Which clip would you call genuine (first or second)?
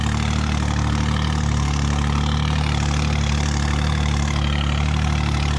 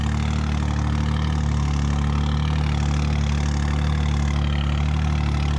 second